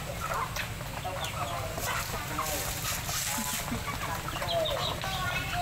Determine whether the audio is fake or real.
real